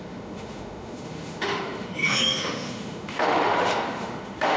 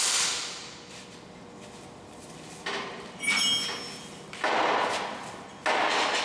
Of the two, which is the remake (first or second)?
first